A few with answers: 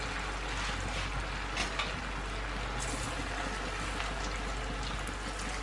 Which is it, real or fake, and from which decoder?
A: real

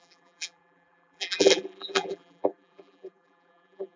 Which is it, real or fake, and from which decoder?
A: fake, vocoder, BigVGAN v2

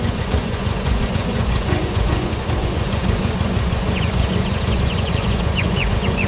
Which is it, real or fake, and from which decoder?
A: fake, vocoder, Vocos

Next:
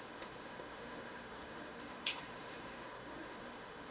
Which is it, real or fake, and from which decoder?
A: fake, autoencoder, DAC-VAE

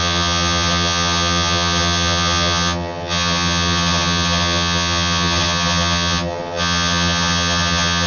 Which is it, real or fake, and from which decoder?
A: fake, vocoder, HiFi-GAN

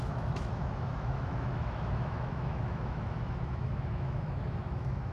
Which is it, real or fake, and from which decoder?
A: fake, autoencoder, DAC-VAE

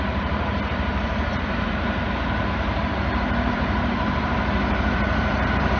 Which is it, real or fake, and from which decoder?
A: fake, vocoder, BigVGAN v2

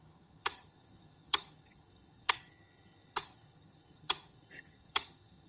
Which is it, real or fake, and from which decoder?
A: fake, vocoder, HiFi-GAN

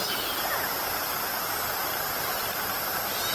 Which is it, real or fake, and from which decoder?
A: real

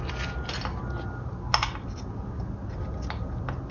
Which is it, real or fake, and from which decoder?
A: real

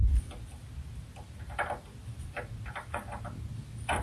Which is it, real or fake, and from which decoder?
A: real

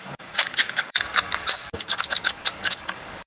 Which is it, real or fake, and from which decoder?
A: fake, codec, DAC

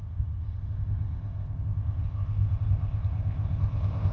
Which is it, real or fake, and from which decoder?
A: fake, codec, ZipCodec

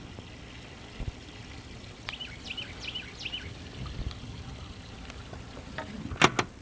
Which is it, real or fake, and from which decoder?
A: real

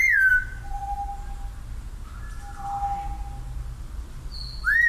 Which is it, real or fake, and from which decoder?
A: real